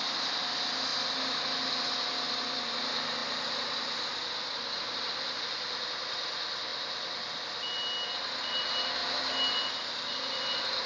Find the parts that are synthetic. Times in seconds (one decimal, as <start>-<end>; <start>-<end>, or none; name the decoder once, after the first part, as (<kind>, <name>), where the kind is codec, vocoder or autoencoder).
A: none